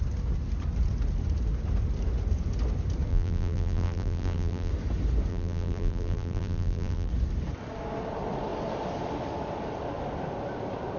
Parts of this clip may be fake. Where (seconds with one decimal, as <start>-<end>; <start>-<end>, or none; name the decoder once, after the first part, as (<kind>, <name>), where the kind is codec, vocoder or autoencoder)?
3.1-4.7 (vocoder, BigVGAN v2); 5.3-7.1